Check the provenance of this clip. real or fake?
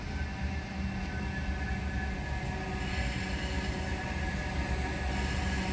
real